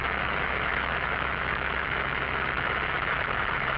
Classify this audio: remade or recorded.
remade